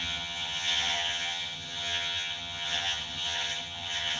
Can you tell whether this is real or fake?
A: fake